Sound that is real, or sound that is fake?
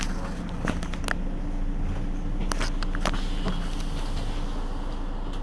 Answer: real